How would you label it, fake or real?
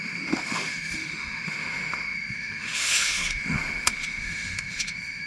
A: fake